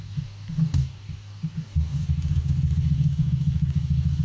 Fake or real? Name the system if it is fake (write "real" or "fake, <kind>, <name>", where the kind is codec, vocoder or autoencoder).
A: fake, codec, DAC